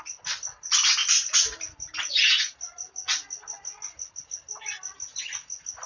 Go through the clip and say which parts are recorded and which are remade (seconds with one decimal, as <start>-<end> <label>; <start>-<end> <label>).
0.0-5.9 recorded